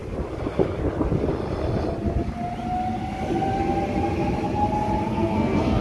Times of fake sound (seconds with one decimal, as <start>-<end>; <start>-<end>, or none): 5.1-5.8